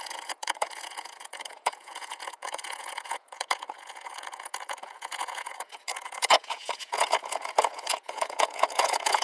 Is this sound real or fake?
fake